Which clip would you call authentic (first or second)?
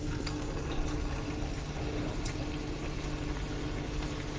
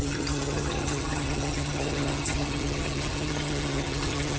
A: first